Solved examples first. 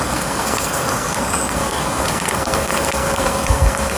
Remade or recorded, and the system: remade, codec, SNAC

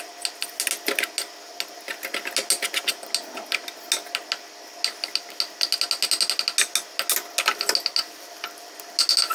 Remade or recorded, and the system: recorded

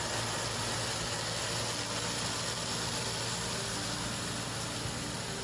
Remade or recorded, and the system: recorded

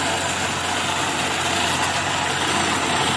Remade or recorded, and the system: recorded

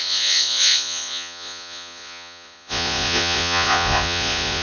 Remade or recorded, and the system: remade, vocoder, Vocos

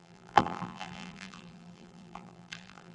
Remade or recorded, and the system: remade, vocoder, BigVGAN v2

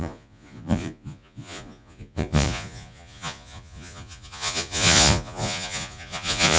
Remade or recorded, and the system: remade, vocoder, Vocos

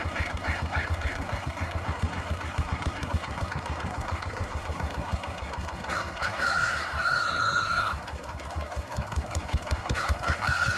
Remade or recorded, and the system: remade, codec, SNAC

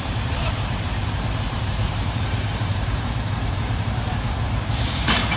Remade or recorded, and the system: remade, vocoder, BigVGAN v2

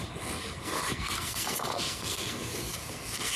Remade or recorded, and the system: remade, codec, SNAC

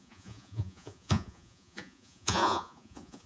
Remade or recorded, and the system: remade, vocoder, Vocos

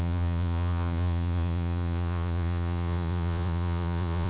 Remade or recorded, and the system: remade, vocoder, Vocos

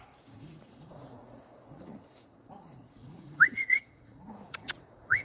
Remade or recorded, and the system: remade, vocoder, Vocos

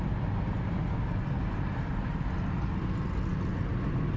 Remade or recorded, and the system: recorded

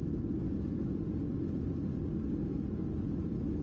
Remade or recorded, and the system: recorded